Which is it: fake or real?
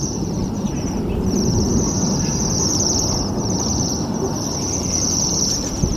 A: fake